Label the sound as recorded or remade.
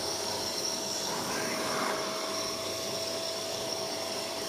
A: remade